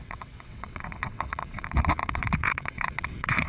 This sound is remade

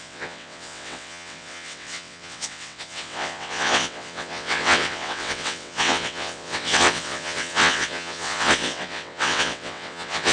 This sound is remade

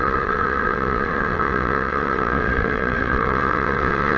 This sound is remade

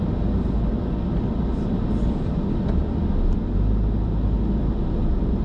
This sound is recorded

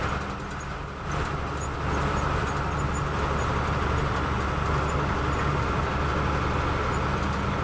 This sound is recorded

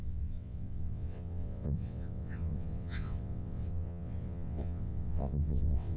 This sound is remade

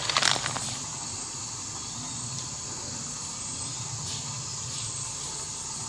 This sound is recorded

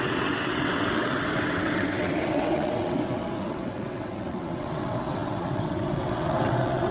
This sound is remade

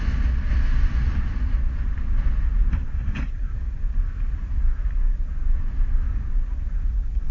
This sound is recorded